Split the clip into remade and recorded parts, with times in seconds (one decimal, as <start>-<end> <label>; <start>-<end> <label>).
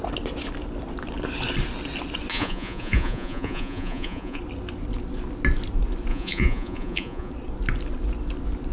0.0-2.3 recorded; 2.3-4.4 remade; 4.4-6.1 recorded; 6.1-7.3 remade; 7.3-8.7 recorded